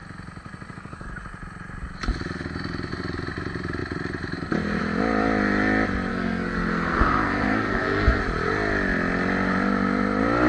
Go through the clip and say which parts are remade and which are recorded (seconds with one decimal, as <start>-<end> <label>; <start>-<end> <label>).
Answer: 0.0-6.1 recorded; 6.1-8.2 remade; 8.2-10.5 recorded